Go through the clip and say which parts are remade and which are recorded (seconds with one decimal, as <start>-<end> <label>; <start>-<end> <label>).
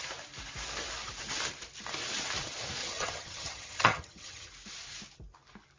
0.0-2.8 recorded; 2.8-4.5 remade; 4.5-5.8 recorded